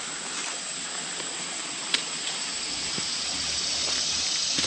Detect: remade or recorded recorded